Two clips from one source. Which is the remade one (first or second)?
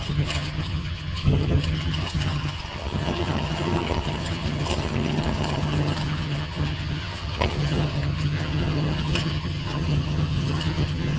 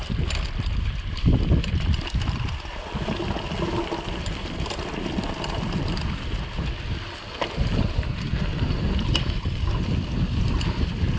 first